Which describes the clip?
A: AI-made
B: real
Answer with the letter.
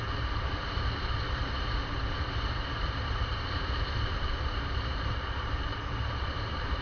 A